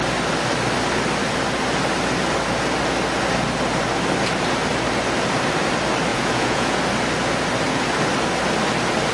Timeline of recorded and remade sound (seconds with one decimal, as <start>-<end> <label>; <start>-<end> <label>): 0.0-6.1 recorded; 6.1-6.8 remade; 6.8-9.1 recorded